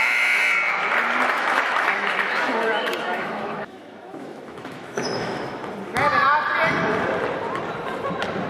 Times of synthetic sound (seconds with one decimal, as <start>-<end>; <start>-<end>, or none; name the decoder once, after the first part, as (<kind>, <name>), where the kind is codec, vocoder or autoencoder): 0.0-0.4 (autoencoder, DAC-VAE); 1.3-5.6